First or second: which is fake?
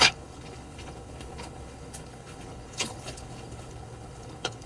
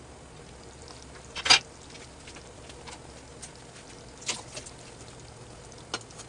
first